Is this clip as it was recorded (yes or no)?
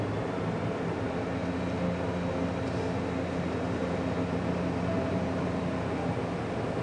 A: yes